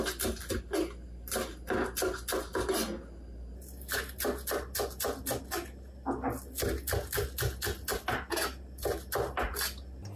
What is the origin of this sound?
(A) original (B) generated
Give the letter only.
A